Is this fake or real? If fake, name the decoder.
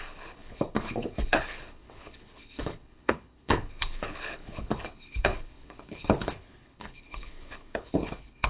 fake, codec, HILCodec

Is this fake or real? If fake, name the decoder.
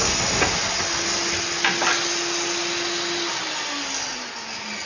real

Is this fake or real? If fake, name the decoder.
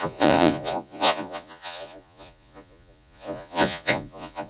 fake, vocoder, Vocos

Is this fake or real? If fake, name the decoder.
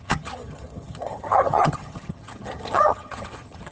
fake, vocoder, HiFi-GAN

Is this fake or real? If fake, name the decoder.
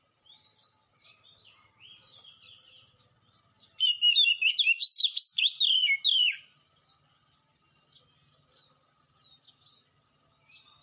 real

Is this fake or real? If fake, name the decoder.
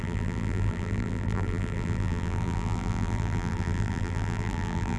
fake, vocoder, BigVGAN v2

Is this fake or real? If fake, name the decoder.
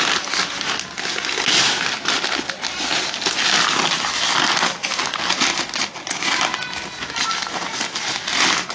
real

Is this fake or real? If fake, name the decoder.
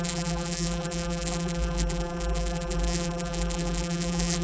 fake, vocoder, BigVGAN v2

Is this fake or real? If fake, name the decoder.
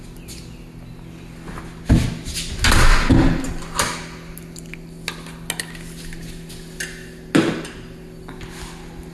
real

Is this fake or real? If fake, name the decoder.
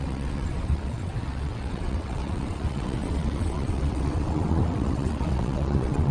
fake, vocoder, WaveNeXt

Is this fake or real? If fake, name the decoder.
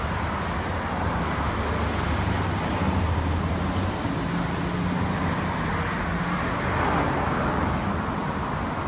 real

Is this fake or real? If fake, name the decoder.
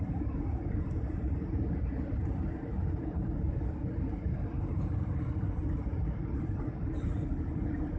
real